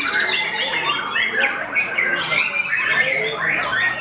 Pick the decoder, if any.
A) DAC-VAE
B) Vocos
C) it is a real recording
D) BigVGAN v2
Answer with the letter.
C